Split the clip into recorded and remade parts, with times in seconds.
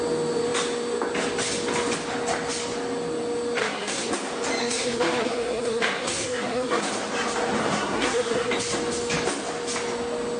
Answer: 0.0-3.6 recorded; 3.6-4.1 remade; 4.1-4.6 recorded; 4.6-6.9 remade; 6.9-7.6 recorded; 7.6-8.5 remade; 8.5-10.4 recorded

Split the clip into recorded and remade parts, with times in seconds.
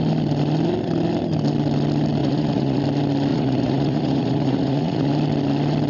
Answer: 0.0-2.2 recorded; 2.2-2.8 remade; 2.8-3.3 recorded; 3.3-5.1 remade; 5.1-5.9 recorded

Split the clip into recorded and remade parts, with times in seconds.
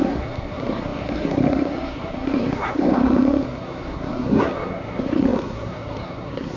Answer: 0.0-6.6 remade